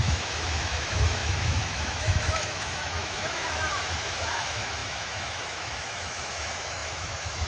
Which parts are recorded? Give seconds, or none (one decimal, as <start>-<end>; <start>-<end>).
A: none